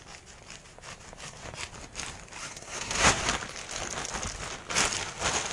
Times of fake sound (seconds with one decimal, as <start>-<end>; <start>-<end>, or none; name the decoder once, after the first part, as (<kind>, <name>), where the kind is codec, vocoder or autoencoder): 2.4-3.2 (codec, SNAC)